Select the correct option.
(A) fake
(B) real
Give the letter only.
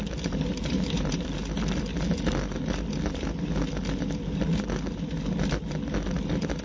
B